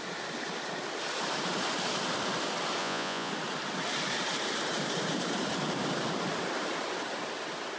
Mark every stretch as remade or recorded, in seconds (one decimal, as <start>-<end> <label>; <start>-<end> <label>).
0.0-2.8 recorded; 2.8-3.3 remade; 3.3-7.8 recorded